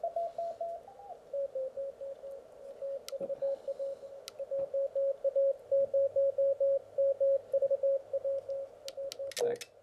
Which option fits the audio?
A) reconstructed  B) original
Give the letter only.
B